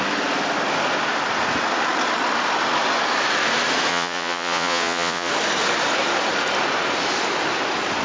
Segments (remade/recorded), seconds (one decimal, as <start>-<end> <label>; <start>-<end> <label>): 0.0-3.9 recorded; 3.9-5.3 remade; 5.3-8.0 recorded